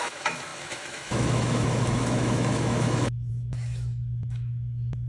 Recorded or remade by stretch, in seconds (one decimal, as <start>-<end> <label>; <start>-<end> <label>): 0.0-5.1 remade

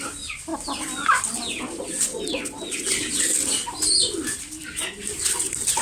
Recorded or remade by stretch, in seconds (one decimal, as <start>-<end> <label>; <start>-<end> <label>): 0.0-5.8 recorded

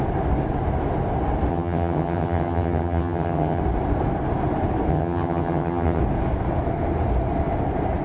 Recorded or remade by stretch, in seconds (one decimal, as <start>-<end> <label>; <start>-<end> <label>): 0.0-1.5 recorded; 1.5-3.6 remade; 3.6-4.9 recorded; 4.9-6.0 remade; 6.0-8.0 recorded

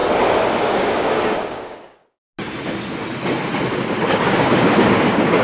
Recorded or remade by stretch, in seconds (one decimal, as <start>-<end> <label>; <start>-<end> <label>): 0.0-0.7 recorded; 0.7-2.0 remade; 2.0-4.1 recorded; 4.1-5.4 remade

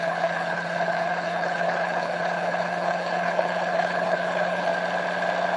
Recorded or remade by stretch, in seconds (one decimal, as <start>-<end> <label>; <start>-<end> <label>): 0.0-4.7 remade; 4.7-5.6 recorded

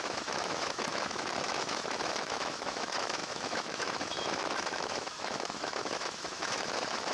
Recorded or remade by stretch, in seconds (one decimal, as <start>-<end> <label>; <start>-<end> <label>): 0.0-7.1 remade

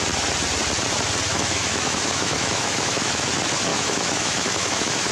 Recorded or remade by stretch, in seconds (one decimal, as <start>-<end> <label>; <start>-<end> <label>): 0.0-1.3 recorded; 1.3-3.3 remade; 3.3-3.7 recorded; 3.7-5.1 remade